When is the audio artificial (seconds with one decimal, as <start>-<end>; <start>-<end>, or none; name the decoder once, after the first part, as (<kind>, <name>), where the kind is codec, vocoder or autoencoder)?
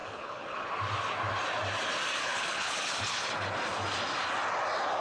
0.0-0.7 (codec, HILCodec); 2.2-3.3